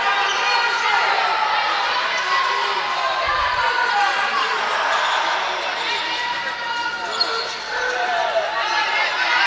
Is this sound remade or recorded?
recorded